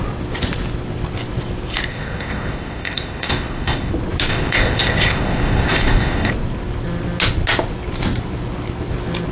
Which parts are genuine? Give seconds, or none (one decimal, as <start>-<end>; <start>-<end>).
0.0-1.9; 3.9-4.3; 6.3-9.3